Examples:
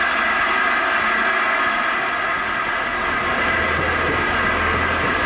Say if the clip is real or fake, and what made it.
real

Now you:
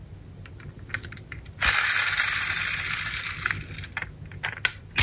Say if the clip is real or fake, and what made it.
real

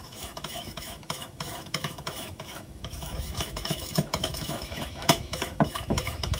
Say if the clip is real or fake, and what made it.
fake, autoencoder, DAC-VAE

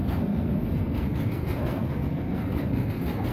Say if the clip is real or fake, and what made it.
fake, codec, SNAC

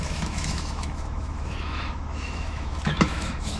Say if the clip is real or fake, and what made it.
fake, autoencoder, DAC-VAE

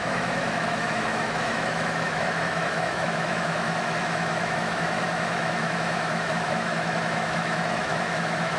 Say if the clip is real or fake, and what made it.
fake, autoencoder, DAC-VAE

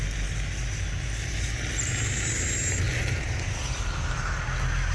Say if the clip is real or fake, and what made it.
real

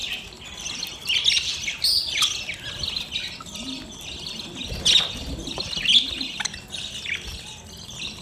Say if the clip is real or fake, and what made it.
real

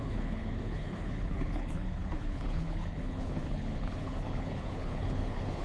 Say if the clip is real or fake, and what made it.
fake, codec, HILCodec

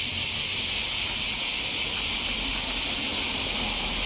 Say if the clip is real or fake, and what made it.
real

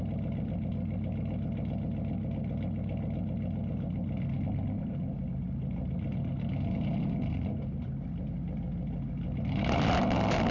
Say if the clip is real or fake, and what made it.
real